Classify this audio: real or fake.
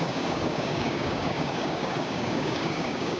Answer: fake